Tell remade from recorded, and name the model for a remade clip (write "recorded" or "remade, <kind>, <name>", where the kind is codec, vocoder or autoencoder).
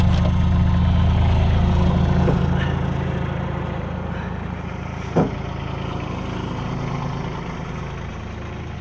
recorded